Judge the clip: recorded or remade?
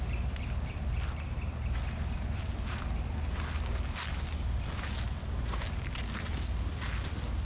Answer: recorded